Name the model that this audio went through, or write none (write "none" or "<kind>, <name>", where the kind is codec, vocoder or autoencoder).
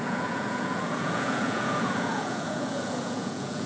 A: vocoder, Vocos